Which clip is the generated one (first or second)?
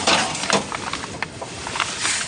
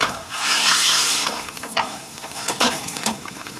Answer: second